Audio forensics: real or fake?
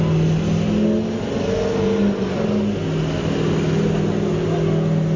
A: real